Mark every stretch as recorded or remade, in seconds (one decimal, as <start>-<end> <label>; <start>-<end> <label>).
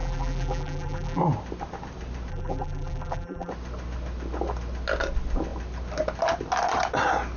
0.0-1.2 remade; 1.2-2.3 recorded; 2.3-3.5 remade; 3.5-7.4 recorded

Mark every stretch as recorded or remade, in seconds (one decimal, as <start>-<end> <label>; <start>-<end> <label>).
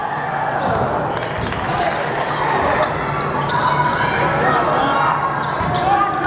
0.0-6.3 recorded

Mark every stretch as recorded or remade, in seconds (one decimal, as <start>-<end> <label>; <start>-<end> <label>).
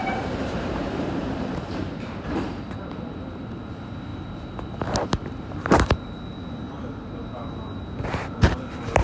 0.0-9.0 remade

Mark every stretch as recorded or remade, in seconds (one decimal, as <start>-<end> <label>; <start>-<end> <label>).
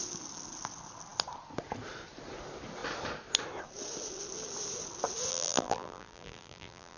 0.0-5.3 recorded; 5.3-7.0 remade